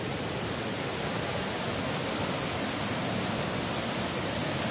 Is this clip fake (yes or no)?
no